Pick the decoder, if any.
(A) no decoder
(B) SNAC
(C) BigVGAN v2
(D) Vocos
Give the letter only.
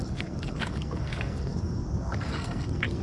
B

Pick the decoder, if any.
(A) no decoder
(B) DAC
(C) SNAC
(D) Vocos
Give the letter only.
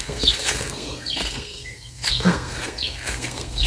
C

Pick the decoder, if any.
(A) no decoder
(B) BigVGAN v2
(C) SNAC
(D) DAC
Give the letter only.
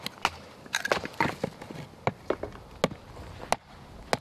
A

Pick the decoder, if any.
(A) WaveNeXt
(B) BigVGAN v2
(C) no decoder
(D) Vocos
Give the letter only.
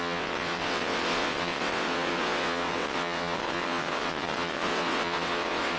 A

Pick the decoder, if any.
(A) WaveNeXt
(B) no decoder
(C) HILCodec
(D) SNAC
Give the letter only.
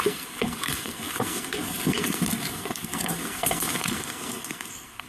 D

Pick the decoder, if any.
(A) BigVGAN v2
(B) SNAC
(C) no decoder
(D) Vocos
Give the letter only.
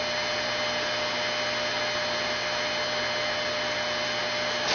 C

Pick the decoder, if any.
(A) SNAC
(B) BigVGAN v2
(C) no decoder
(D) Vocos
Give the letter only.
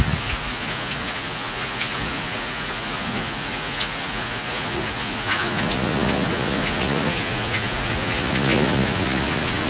D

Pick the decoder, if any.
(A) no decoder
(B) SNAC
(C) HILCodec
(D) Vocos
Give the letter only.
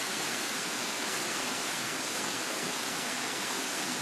B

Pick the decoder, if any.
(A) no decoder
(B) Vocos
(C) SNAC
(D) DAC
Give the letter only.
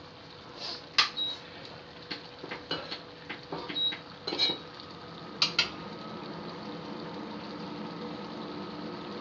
A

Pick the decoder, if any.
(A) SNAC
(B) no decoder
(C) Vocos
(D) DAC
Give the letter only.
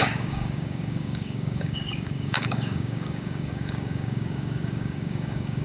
D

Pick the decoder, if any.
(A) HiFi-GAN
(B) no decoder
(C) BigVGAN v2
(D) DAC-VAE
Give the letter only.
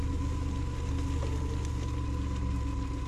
B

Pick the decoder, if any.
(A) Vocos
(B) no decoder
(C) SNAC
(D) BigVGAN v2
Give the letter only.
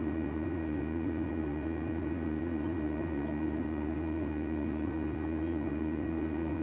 A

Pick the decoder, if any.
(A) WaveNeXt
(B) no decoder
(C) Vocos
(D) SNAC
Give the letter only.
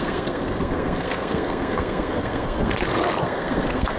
D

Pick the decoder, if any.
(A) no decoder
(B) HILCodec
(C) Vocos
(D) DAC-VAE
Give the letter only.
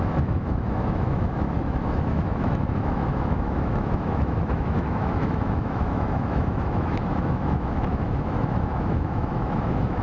D